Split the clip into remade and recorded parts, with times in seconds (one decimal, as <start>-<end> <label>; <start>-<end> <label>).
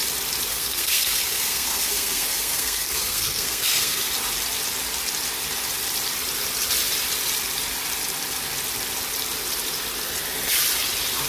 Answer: 0.0-0.5 recorded; 0.5-4.0 remade; 4.0-11.3 recorded